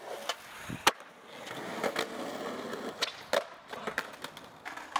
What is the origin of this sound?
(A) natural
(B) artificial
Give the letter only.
A